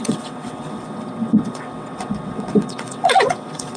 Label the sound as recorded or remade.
remade